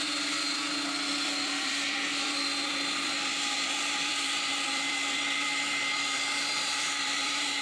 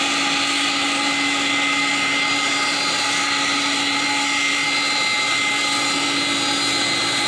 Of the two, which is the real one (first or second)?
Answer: second